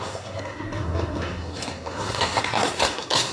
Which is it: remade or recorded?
remade